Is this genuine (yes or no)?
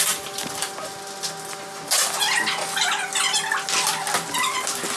yes